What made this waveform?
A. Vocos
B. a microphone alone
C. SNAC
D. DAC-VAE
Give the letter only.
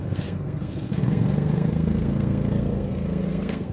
C